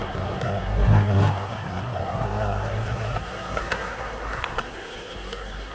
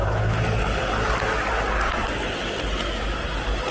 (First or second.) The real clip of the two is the second